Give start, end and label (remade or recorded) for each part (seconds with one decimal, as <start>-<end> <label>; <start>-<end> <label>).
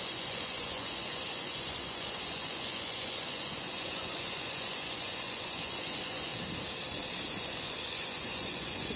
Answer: 0.0-6.3 remade; 6.3-7.3 recorded; 7.3-9.0 remade